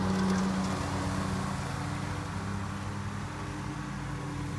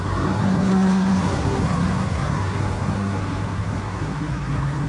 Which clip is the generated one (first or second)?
second